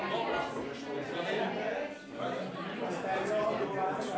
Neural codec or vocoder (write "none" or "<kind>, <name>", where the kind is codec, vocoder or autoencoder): none